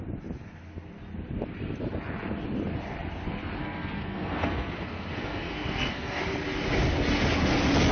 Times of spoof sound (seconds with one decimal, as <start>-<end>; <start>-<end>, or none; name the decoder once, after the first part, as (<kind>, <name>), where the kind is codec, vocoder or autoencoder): 3.6-6.2 (codec, SNAC)